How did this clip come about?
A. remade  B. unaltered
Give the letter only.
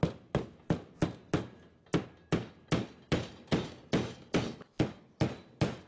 B